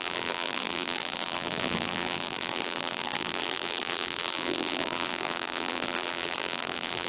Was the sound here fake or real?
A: fake